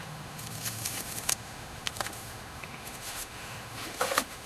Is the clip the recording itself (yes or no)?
no